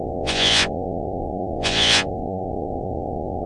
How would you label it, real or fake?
fake